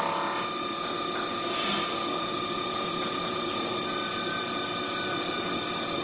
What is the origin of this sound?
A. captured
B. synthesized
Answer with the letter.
A